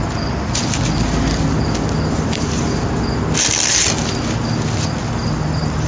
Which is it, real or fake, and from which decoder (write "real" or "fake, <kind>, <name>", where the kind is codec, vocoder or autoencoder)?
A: real